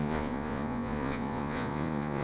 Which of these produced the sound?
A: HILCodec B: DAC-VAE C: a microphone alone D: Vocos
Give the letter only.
D